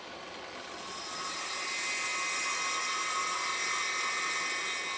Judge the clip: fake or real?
real